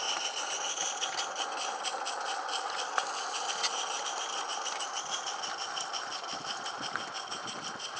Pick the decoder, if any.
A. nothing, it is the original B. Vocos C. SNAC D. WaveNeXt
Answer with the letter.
A